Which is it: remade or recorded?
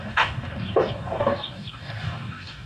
remade